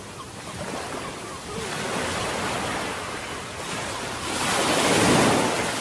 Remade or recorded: recorded